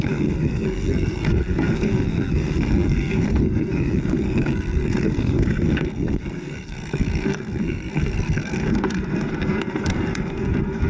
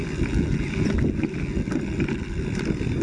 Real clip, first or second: second